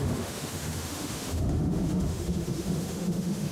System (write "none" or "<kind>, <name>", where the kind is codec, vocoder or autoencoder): autoencoder, DAC-VAE